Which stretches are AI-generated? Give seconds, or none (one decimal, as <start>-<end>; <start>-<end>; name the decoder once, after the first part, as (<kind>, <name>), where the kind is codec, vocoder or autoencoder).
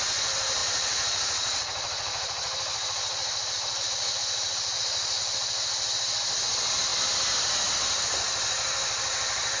0.6-5.2 (vocoder, Vocos)